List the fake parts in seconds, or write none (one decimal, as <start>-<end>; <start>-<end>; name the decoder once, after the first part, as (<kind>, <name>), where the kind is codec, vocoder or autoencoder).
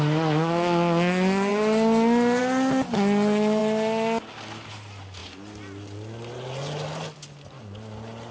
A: none